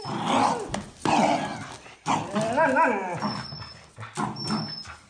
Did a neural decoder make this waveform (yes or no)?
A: no